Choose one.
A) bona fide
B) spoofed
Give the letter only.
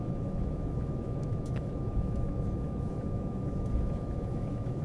B